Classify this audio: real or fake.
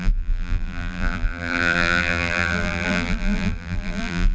fake